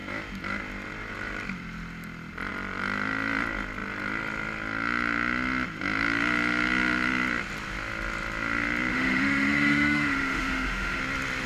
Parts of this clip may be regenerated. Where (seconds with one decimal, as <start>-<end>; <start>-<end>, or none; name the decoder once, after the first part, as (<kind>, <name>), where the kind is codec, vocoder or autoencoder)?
8.9-11.0 (autoencoder, DAC-VAE)